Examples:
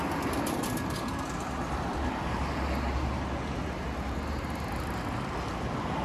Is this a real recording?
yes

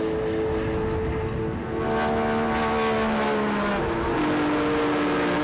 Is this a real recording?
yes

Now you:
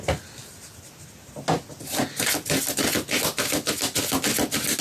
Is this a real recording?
yes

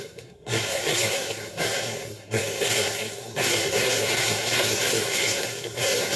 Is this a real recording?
no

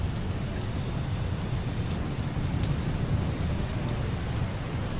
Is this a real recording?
yes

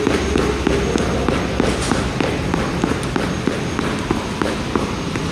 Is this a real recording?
yes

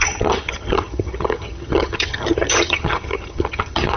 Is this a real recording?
no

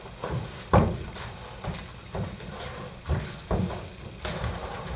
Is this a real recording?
yes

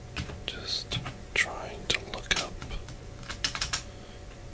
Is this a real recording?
no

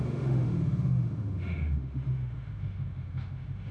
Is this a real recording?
no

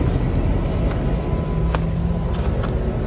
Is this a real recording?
yes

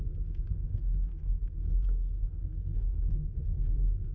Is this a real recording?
no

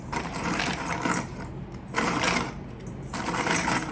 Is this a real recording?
yes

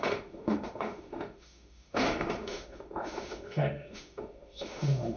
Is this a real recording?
no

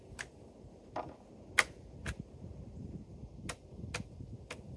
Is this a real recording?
yes